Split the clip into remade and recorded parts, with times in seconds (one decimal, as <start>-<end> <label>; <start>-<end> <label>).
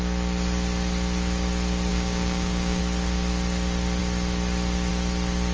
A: 0.0-1.9 recorded; 1.9-2.8 remade; 2.8-5.5 recorded